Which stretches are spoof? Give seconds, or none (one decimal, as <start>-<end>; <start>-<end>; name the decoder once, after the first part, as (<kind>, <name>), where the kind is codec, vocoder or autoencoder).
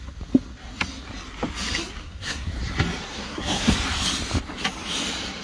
2.0-2.5 (codec, SNAC); 3.1-3.7